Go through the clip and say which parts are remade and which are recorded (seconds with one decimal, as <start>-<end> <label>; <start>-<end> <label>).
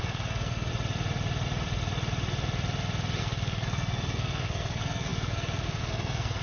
0.0-0.7 remade; 0.7-3.2 recorded; 3.2-6.4 remade